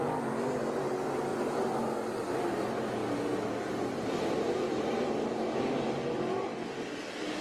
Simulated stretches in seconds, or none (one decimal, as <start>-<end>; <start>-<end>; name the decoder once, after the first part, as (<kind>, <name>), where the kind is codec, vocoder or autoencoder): none